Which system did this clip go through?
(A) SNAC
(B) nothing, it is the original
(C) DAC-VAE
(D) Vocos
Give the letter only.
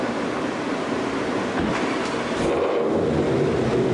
B